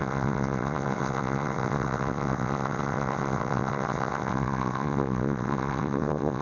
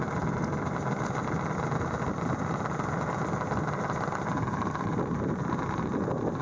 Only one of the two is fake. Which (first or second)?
first